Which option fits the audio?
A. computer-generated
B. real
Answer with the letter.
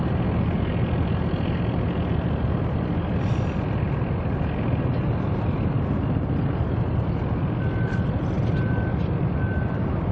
B